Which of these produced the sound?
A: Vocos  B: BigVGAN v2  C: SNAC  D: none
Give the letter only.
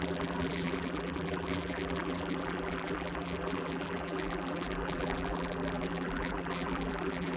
B